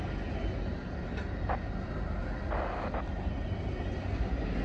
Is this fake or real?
real